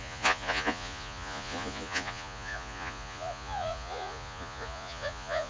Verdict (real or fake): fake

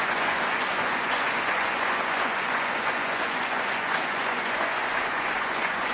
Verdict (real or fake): fake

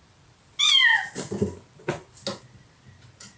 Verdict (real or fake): real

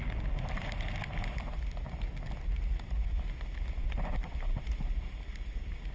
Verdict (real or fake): real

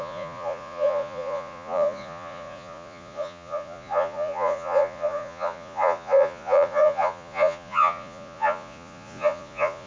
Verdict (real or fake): fake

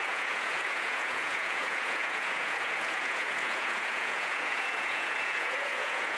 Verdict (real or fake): fake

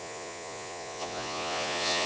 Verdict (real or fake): fake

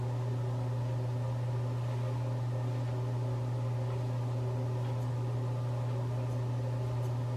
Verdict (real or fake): real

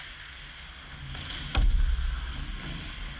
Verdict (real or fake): real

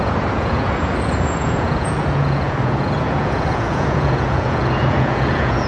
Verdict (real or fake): fake